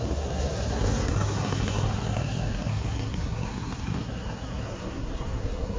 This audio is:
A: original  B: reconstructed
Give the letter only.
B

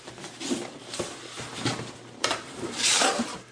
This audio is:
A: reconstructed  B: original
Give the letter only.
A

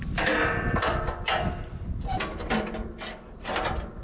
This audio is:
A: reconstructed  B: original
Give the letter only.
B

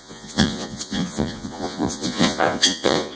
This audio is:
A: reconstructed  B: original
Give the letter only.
A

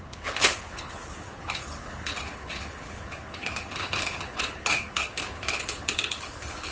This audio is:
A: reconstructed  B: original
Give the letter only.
A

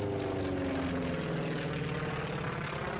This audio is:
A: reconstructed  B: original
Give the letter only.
B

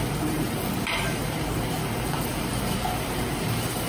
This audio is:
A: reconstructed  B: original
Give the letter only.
A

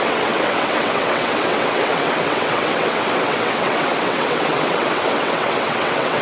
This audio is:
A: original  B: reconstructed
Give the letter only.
B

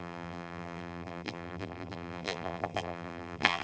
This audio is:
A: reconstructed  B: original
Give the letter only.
A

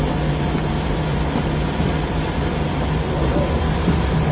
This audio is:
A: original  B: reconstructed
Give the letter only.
A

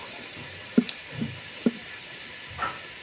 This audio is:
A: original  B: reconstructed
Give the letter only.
A